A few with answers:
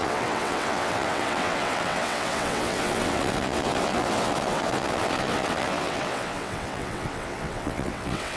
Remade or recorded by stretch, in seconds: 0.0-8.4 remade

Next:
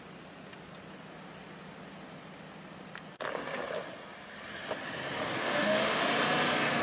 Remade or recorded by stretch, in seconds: 0.0-5.4 recorded; 5.4-6.0 remade; 6.0-6.8 recorded

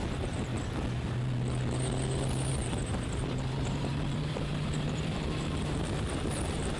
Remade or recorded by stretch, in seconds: 0.0-0.5 remade; 0.5-2.5 recorded; 2.5-6.8 remade

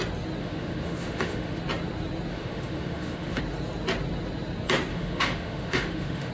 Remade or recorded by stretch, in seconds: 0.0-0.4 recorded; 0.4-1.6 remade; 1.6-2.3 recorded; 2.3-3.4 remade; 3.4-4.9 recorded; 4.9-6.3 remade

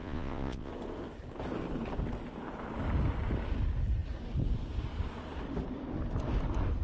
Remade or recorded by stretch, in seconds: 0.0-0.7 remade; 0.7-6.8 recorded